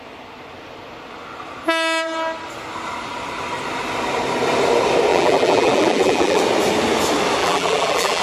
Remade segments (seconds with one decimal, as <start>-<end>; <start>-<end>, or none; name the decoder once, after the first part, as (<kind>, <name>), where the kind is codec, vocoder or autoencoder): 5.1-6.4 (vocoder, BigVGAN v2); 7.4-8.2